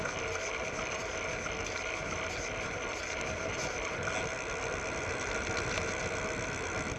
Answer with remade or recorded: recorded